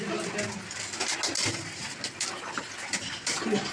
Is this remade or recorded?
recorded